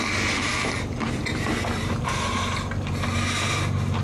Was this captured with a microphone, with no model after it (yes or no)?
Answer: yes